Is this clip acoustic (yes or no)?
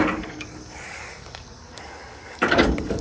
no